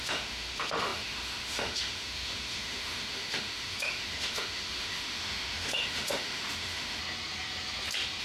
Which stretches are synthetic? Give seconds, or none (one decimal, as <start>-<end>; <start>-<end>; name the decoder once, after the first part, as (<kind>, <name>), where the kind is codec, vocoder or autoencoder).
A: 0.0-7.0 (autoencoder, DAC-VAE)